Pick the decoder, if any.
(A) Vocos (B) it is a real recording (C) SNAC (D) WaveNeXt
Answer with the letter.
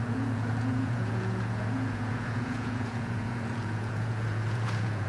A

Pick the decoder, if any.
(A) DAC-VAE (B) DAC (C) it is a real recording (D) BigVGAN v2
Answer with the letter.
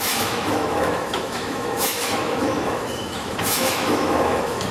A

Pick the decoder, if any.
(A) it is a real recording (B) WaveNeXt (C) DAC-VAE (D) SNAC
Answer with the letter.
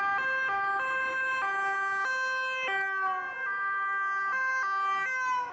A